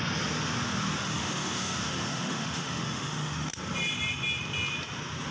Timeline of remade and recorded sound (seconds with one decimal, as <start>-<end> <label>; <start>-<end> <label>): 0.0-1.0 recorded; 1.0-3.5 remade; 3.5-5.3 recorded